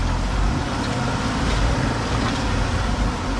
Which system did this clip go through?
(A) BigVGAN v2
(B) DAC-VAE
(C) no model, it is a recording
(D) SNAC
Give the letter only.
A